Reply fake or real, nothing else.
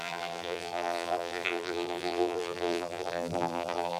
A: fake